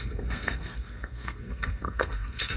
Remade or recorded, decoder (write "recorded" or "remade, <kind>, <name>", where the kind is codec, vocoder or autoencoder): remade, codec, SNAC